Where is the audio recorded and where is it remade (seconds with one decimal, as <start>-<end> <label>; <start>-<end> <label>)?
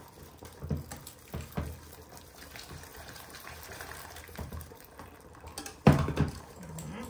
0.0-2.9 recorded; 2.9-7.1 remade